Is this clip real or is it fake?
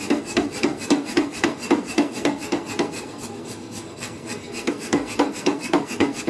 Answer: fake